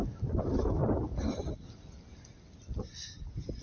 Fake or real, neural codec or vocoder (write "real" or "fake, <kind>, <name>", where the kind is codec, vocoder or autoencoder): real